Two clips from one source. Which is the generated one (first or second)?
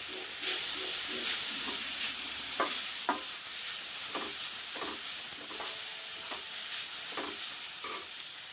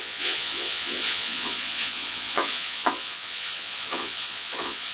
second